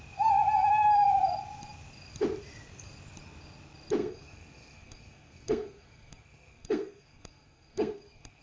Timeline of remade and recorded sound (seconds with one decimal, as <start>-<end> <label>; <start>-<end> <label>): 0.0-4.0 recorded; 4.0-8.4 remade